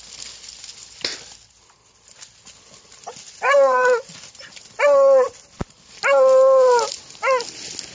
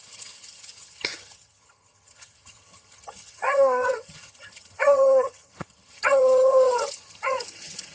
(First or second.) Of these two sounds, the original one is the first